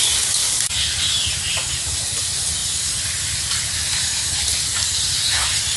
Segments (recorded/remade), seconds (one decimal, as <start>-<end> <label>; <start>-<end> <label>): 0.0-2.6 recorded; 2.6-5.2 remade; 5.2-5.8 recorded